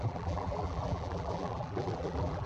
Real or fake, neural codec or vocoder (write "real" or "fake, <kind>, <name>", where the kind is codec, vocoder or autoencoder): fake, vocoder, BigVGAN v2